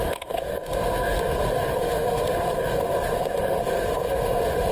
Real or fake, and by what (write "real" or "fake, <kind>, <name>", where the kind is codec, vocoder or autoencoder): fake, autoencoder, DAC-VAE